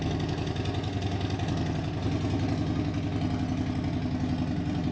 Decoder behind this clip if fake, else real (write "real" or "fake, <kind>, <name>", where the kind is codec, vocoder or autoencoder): real